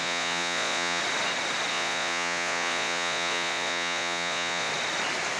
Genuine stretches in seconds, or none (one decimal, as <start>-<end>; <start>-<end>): 1.0-1.7; 4.7-5.4